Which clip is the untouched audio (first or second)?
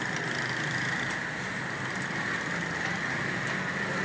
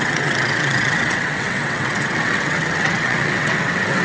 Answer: first